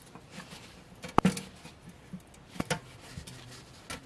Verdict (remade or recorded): recorded